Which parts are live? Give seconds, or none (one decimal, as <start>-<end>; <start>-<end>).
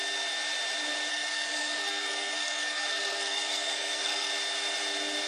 0.0-1.1; 4.3-5.3